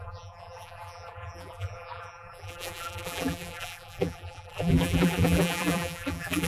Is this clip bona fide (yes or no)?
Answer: no